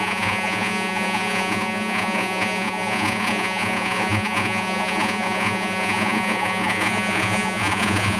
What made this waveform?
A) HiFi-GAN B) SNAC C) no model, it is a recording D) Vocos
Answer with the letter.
D